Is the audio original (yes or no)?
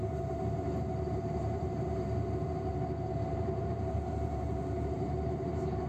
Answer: no